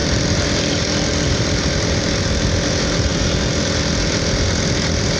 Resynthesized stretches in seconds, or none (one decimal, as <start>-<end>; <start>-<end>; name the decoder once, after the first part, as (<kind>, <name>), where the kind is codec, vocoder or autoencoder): 0.0-1.5 (vocoder, BigVGAN v2)